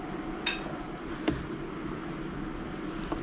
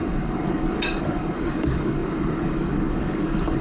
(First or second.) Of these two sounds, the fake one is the second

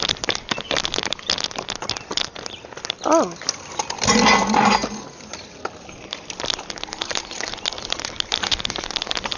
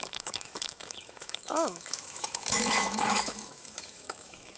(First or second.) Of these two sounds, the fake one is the second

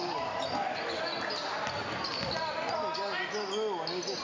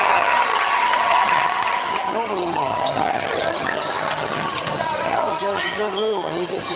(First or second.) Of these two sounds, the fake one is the second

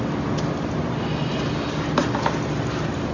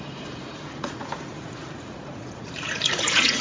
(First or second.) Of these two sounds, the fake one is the second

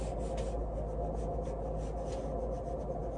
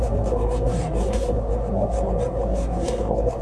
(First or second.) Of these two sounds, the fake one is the second